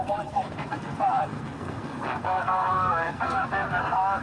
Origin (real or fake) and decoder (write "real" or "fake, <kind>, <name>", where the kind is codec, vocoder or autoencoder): fake, codec, SNAC